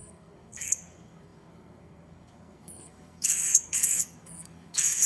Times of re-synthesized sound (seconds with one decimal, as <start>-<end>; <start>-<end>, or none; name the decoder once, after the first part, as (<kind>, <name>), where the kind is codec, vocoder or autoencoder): 0.0-5.1 (codec, SNAC)